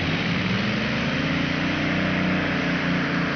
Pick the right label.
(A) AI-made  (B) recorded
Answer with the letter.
B